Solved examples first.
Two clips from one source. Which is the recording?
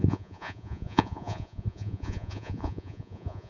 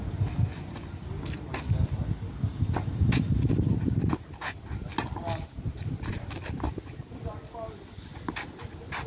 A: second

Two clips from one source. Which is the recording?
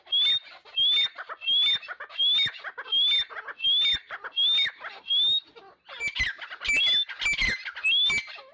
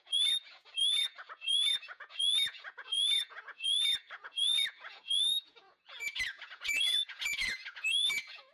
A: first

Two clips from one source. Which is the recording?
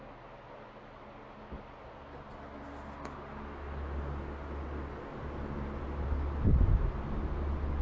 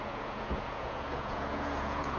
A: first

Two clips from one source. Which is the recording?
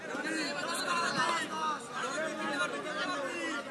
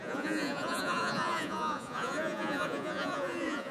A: first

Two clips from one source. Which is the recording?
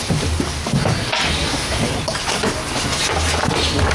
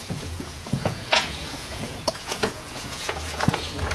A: first